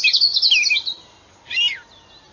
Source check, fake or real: real